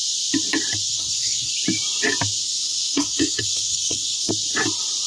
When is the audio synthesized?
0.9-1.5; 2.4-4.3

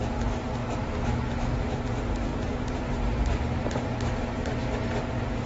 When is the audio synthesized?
2.3-2.8

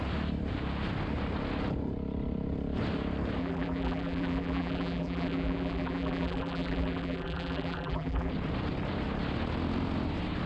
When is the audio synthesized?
3.4-8.3

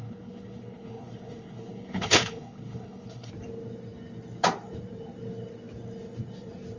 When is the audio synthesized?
0.0-3.3

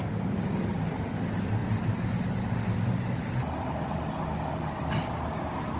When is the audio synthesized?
none

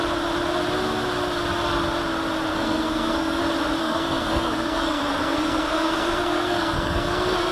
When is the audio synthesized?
2.5-3.4; 3.8-7.5